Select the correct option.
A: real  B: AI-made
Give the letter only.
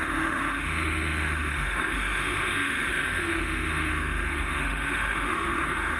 B